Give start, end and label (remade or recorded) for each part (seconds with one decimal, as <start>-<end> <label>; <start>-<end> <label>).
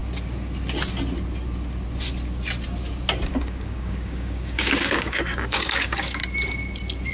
0.0-3.3 recorded; 3.3-6.2 remade; 6.2-7.1 recorded